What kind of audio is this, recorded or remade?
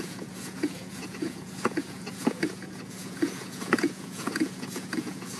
remade